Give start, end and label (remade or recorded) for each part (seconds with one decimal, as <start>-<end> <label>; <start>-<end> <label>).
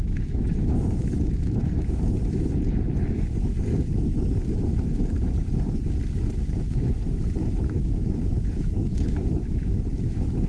0.0-2.2 remade; 2.2-6.1 recorded; 6.1-10.5 remade